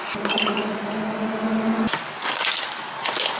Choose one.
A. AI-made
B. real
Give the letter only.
B